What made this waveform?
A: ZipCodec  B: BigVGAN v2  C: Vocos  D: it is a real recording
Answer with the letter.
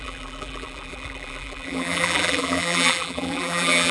B